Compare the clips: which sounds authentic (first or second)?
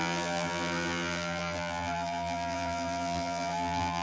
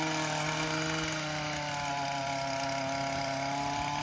second